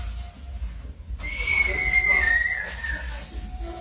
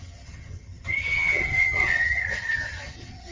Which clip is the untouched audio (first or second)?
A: first